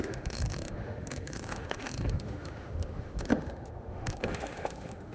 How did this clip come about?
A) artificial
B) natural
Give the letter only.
A